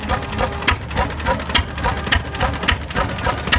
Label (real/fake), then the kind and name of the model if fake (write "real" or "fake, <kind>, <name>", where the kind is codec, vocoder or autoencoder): real